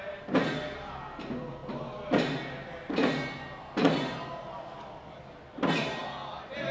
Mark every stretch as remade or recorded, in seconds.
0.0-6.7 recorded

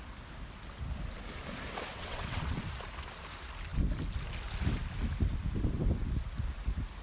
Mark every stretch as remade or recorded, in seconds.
0.0-1.9 recorded; 1.9-2.6 remade; 2.6-7.0 recorded

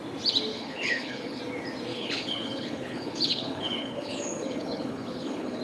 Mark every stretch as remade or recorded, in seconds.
0.0-0.5 recorded; 0.5-1.4 remade; 1.4-1.9 recorded; 1.9-5.6 remade

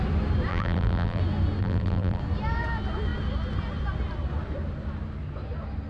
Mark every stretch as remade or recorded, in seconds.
0.0-0.5 recorded; 0.5-1.2 remade; 1.2-1.6 recorded; 1.6-2.2 remade; 2.2-5.9 recorded

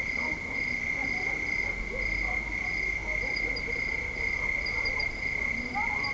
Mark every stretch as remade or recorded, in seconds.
0.0-6.1 recorded

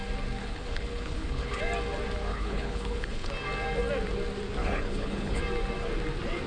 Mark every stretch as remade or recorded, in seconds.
0.0-0.4 recorded; 0.4-1.6 remade; 1.6-2.3 recorded; 2.3-3.3 remade; 3.3-4.6 recorded; 4.6-5.4 remade; 5.4-6.5 recorded

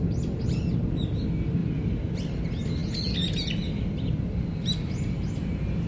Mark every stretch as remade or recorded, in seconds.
0.0-1.6 recorded; 1.6-2.2 remade; 2.2-5.9 recorded